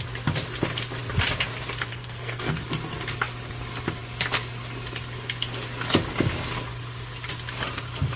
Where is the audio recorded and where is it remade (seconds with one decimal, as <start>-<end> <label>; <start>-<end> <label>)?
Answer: 0.0-1.9 recorded; 1.9-2.6 remade; 2.6-8.2 recorded